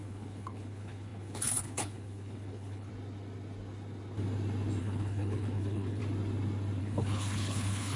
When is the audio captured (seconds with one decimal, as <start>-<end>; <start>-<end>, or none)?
2.9-4.8; 6.0-6.8